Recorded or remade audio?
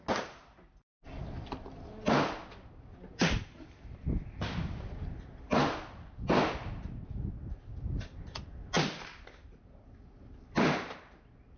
recorded